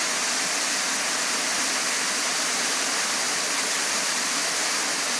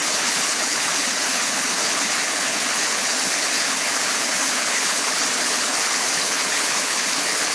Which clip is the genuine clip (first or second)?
first